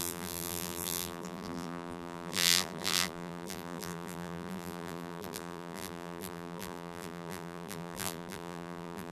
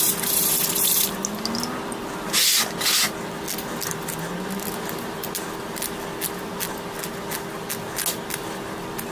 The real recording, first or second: second